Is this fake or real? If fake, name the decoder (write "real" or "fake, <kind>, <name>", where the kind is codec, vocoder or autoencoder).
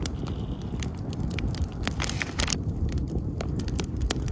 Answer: real